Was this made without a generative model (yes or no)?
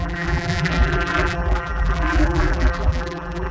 no